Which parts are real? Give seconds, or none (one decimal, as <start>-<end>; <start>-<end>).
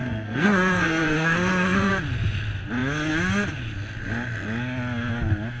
1.9-5.6